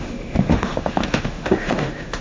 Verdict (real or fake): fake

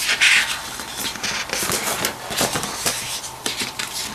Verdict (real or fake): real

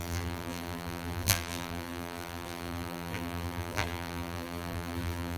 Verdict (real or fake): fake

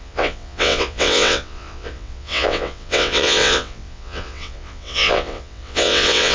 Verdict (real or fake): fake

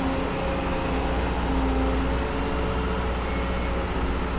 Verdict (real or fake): real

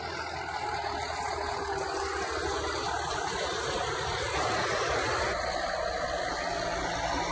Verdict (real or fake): real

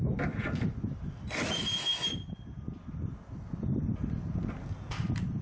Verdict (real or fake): real